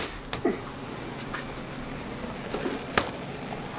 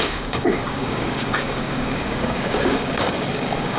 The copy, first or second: second